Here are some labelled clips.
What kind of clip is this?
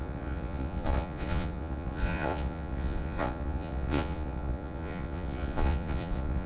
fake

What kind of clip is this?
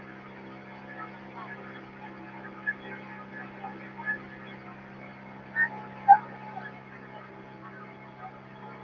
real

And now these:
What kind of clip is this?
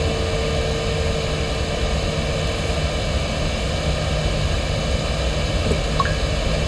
real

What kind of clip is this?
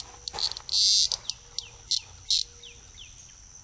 real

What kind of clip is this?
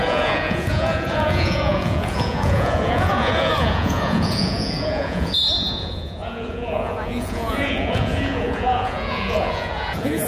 fake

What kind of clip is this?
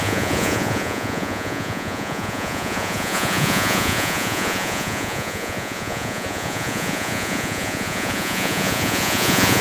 fake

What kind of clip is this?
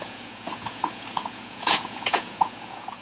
fake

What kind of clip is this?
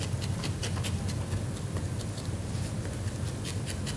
real